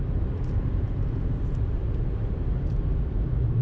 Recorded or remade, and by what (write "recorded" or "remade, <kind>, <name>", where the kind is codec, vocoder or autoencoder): remade, vocoder, BigVGAN v2